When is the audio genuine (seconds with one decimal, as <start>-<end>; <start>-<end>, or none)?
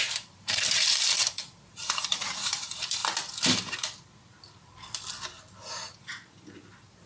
3.0-7.1